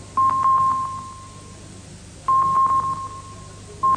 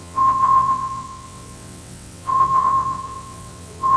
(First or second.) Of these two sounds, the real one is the first